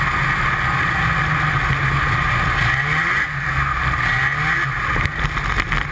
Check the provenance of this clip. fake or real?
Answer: real